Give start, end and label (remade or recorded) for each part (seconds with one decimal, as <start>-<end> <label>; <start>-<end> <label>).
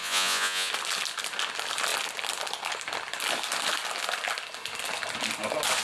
0.0-0.7 remade; 0.7-5.8 recorded